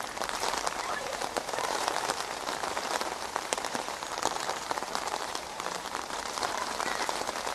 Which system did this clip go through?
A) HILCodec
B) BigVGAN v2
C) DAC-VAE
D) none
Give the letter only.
B